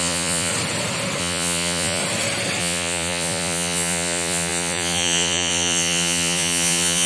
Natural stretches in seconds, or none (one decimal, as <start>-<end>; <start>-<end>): 0.5-1.2; 2.0-2.6